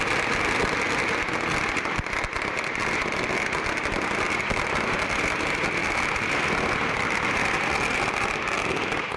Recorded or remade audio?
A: recorded